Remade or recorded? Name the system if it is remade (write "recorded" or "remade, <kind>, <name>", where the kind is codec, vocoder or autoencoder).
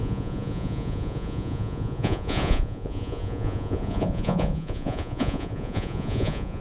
remade, vocoder, Vocos